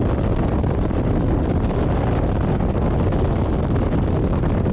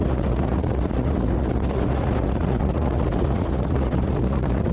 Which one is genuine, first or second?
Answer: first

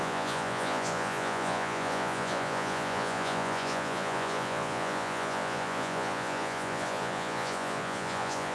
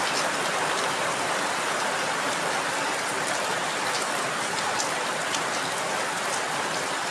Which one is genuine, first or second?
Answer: second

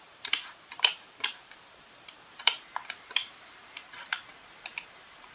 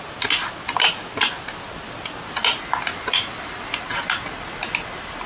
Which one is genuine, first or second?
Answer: second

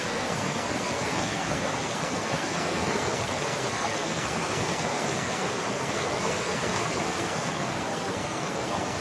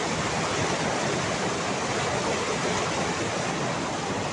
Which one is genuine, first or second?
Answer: second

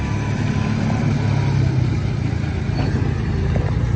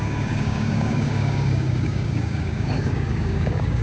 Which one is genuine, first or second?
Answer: first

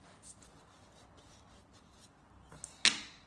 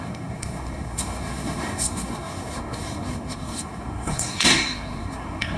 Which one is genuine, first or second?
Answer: first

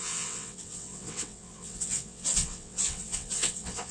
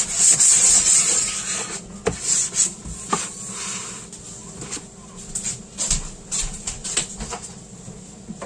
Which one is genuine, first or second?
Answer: second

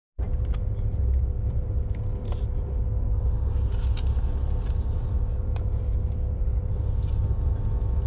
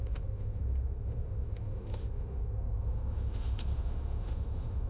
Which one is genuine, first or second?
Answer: first